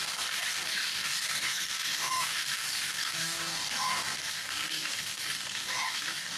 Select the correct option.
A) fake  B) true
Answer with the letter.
A